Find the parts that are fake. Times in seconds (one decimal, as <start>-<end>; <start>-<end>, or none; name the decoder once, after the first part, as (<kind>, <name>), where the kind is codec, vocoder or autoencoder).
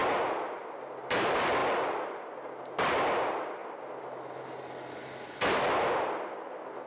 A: none